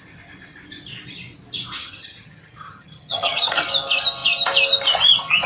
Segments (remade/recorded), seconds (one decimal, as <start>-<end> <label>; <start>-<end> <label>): 0.0-1.8 recorded; 1.8-3.5 remade; 3.5-5.5 recorded